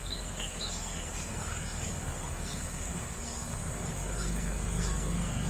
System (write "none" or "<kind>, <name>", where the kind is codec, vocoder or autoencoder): codec, SNAC